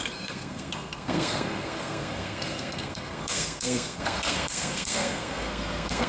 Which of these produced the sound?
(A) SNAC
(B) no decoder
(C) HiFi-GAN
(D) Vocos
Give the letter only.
A